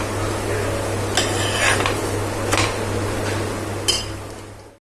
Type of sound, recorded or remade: recorded